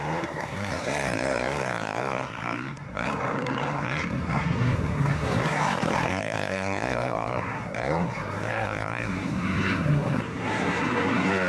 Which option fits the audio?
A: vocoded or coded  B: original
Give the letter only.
A